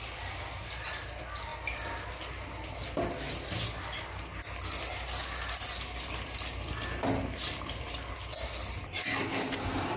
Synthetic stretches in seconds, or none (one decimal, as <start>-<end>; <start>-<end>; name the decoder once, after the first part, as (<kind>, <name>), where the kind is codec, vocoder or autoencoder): none